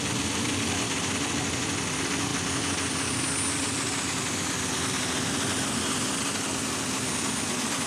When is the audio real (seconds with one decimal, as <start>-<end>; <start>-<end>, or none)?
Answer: 0.0-7.9